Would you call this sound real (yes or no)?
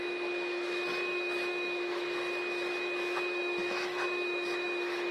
no